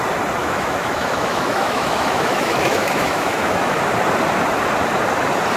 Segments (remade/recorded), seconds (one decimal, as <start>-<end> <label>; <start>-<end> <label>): 0.0-0.4 recorded; 0.4-3.8 remade; 3.8-5.6 recorded